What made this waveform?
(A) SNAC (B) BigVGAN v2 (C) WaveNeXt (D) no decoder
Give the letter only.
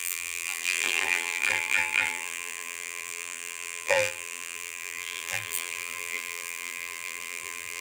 B